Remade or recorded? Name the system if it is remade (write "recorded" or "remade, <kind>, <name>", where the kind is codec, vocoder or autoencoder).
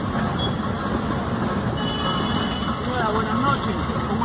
recorded